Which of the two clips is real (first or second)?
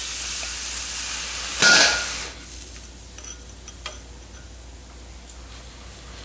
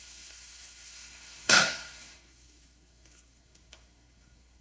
first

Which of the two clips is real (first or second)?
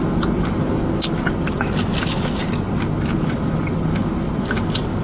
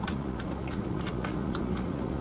first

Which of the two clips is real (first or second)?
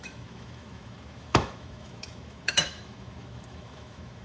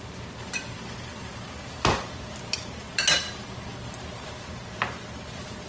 second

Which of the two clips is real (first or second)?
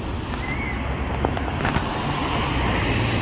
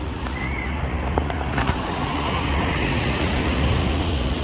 first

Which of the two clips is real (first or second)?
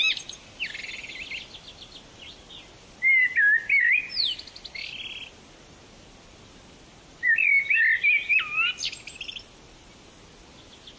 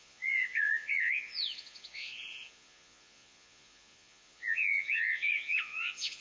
first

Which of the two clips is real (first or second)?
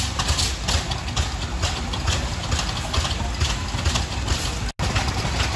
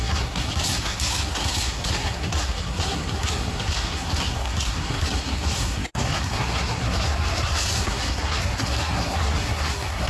first